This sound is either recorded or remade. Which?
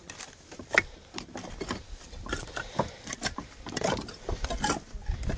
recorded